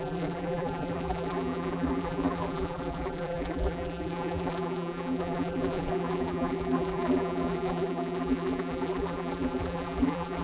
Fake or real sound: fake